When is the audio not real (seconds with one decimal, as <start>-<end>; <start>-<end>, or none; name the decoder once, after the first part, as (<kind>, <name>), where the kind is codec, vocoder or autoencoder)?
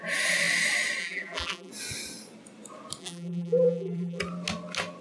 1.0-1.7 (vocoder, BigVGAN v2); 3.0-4.2